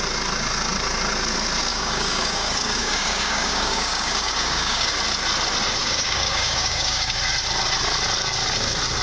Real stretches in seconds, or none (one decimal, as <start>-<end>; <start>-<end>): 0.0-1.7; 4.9-5.8; 7.2-9.0